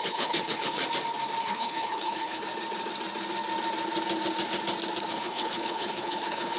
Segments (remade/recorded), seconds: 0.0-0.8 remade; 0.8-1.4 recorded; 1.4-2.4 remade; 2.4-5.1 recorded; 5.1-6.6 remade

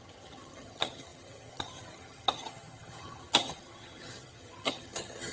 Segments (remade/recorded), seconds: 0.0-5.3 remade

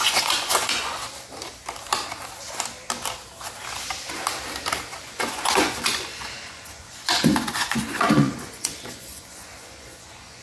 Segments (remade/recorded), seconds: 0.0-1.0 remade; 1.0-5.0 recorded; 5.0-10.4 remade

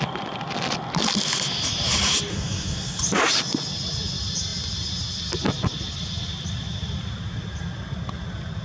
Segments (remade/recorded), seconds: 0.0-2.3 recorded; 2.3-3.0 remade; 3.0-8.6 recorded

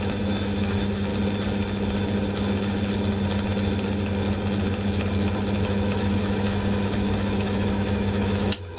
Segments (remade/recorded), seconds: 0.0-1.1 remade; 1.1-5.6 recorded; 5.6-8.8 remade